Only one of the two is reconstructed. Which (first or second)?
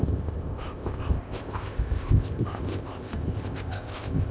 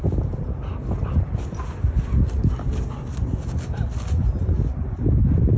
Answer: first